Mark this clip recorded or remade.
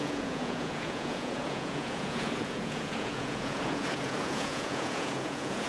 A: remade